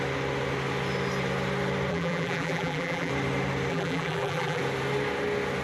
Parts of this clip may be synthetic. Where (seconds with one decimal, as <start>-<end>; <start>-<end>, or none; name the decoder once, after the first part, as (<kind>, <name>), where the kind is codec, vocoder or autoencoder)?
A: 1.9-3.1 (vocoder, BigVGAN v2); 3.7-4.6